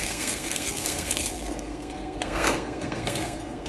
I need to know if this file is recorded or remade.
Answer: remade